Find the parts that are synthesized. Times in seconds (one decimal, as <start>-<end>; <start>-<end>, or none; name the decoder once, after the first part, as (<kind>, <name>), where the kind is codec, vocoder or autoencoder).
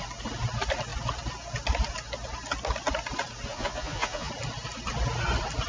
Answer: 3.5-4.3 (vocoder, Vocos)